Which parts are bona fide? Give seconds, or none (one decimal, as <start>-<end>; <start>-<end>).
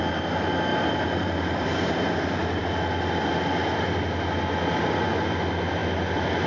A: 0.0-0.7; 2.6-6.5